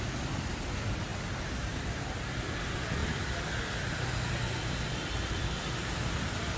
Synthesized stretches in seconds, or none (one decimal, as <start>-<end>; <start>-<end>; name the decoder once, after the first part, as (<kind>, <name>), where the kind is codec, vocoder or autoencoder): none